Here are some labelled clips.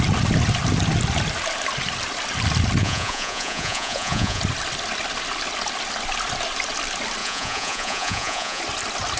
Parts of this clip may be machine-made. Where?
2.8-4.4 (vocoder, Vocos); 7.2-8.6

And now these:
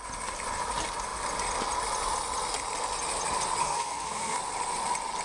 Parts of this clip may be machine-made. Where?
3.6-4.4 (codec, SNAC)

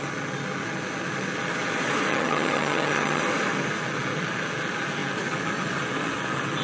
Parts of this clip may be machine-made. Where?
2.1-3.2 (vocoder, HiFi-GAN)

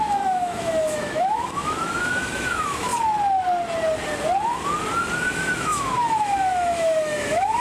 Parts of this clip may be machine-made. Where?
0.0-2.9 (autoencoder, DAC-VAE); 5.3-7.6

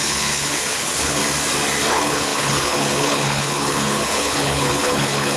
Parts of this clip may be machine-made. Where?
0.0-1.2 (codec, HILCodec); 1.9-5.4